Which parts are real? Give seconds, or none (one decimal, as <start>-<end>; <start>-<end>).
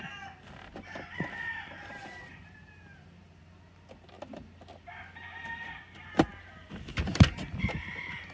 0.0-8.3